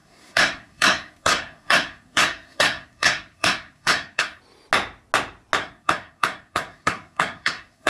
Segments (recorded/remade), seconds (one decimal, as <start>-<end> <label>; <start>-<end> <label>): 0.0-4.4 remade; 4.4-5.6 recorded; 5.6-7.9 remade